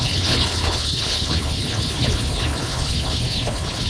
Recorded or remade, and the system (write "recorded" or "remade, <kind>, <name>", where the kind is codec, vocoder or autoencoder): remade, codec, HILCodec